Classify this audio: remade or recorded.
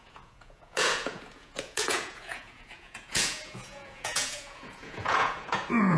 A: remade